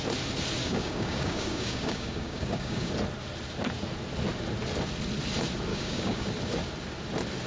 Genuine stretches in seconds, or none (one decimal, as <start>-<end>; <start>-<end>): 0.0-0.6; 2.9-5.7; 6.3-7.5